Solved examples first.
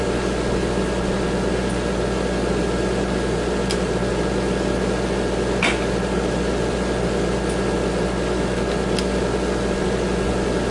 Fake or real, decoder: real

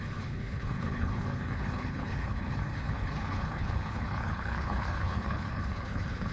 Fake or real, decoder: fake, codec, HILCodec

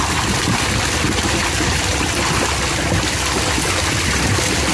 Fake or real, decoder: real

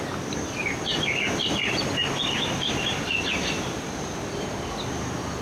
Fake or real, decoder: real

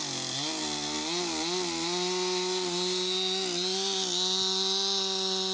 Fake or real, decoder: real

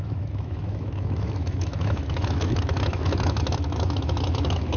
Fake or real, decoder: fake, autoencoder, DAC-VAE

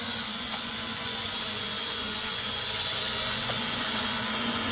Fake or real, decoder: fake, vocoder, Vocos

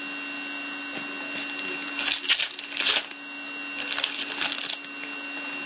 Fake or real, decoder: real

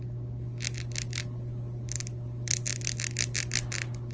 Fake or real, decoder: real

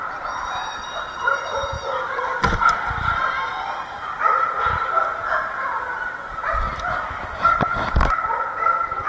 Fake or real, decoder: fake, vocoder, BigVGAN v2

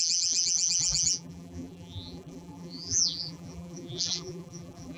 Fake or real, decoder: fake, vocoder, BigVGAN v2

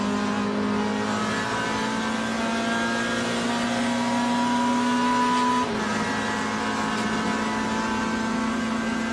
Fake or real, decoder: real